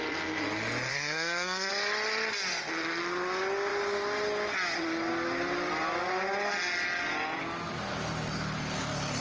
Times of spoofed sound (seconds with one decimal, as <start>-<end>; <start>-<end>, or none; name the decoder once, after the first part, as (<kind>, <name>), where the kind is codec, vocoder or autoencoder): 0.9-1.7 (codec, SNAC)